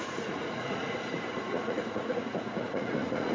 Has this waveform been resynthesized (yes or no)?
yes